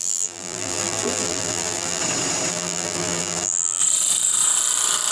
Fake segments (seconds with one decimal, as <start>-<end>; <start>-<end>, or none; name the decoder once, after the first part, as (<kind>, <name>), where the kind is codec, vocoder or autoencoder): 0.0-2.0 (vocoder, BigVGAN v2); 2.5-3.8